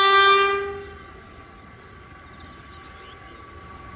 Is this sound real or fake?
real